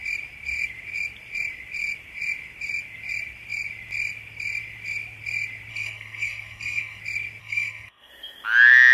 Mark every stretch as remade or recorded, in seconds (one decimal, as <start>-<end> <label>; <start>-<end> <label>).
0.0-5.7 recorded; 5.7-7.0 remade; 7.0-7.4 recorded; 7.4-8.1 remade; 8.1-8.9 recorded